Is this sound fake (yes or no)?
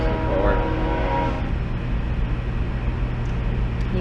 no